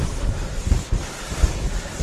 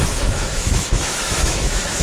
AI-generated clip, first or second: second